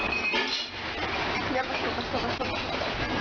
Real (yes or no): yes